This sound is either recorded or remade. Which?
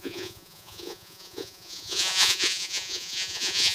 remade